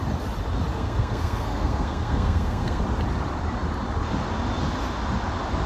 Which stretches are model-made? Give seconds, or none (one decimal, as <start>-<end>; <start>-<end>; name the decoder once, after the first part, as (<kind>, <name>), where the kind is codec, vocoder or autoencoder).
0.7-2.8 (codec, SNAC)